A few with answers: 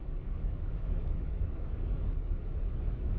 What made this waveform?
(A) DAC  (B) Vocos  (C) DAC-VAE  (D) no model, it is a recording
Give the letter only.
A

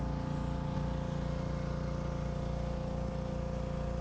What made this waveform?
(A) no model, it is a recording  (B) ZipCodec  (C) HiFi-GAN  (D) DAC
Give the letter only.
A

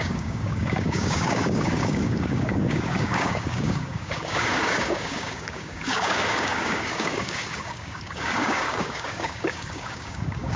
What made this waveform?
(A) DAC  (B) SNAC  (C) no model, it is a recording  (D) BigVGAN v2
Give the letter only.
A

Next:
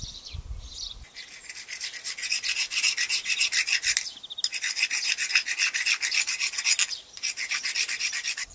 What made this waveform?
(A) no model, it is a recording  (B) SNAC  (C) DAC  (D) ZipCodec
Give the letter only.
A